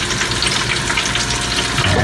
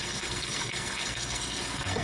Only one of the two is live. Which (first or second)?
first